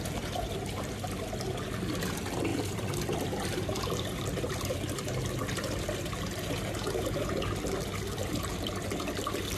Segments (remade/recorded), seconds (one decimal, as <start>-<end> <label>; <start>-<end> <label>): 0.0-2.5 recorded; 2.5-6.5 remade; 6.5-8.2 recorded; 8.2-8.7 remade; 8.7-9.6 recorded